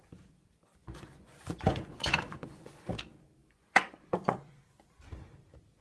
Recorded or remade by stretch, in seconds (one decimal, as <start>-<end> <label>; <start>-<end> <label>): 0.0-0.8 recorded; 0.8-2.9 remade; 2.9-3.4 recorded; 3.4-4.6 remade; 4.6-5.8 recorded